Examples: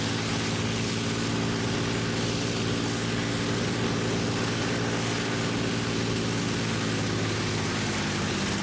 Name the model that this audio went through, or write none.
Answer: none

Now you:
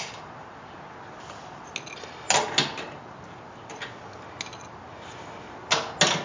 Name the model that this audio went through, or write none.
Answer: none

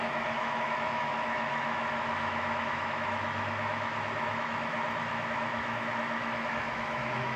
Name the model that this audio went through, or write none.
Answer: autoencoder, DAC-VAE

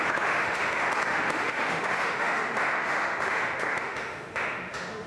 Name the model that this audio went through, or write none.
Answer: autoencoder, DAC-VAE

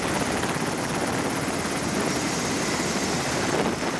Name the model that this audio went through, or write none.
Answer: none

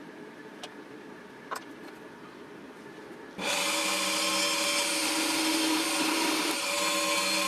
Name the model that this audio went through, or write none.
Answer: none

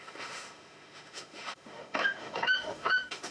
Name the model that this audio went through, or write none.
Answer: autoencoder, DAC-VAE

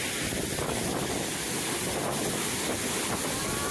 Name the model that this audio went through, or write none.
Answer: none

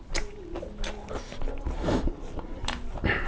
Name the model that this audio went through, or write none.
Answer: none